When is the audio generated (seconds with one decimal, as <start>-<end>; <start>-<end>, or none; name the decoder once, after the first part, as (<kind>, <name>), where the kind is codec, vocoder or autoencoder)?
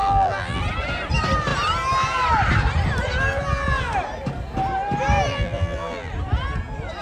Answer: 0.0-0.6 (vocoder, BigVGAN v2); 5.3-6.1